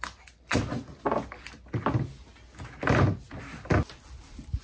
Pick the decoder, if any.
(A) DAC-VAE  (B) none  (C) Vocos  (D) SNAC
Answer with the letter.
B